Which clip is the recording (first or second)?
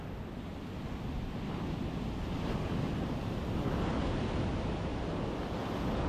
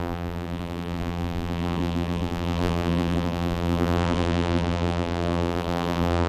first